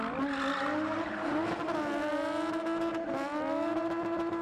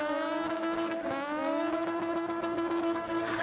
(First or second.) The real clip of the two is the first